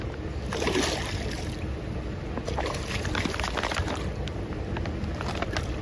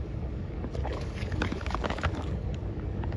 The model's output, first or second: second